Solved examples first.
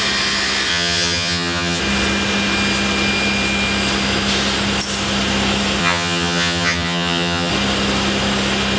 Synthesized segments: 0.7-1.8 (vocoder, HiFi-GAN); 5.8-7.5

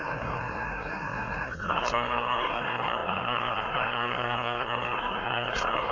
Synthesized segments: 0.0-5.9 (codec, SNAC)

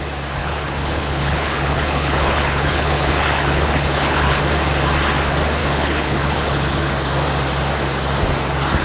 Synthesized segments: 0.4-4.4 (codec, HILCodec); 5.6-6.9